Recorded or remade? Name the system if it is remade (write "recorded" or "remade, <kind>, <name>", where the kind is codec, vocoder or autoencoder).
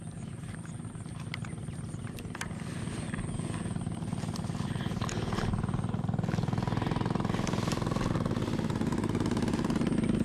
recorded